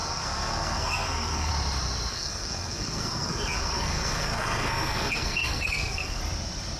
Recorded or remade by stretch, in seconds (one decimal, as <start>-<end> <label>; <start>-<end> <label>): 0.0-1.5 remade; 1.5-2.1 recorded; 2.1-6.2 remade; 6.2-6.8 recorded